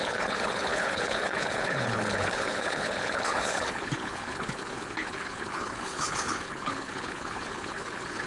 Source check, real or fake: fake